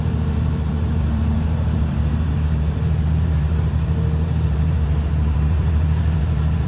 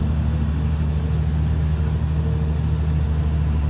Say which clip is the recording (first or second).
second